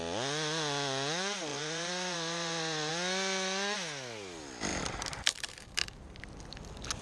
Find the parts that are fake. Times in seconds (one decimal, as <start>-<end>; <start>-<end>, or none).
1.5-2.9; 4.7-6.2